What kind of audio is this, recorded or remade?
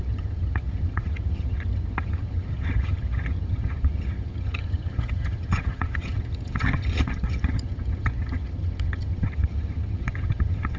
remade